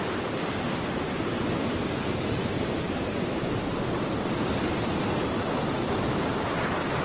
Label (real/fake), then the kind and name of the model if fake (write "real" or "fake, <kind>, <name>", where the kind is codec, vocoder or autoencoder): fake, vocoder, BigVGAN v2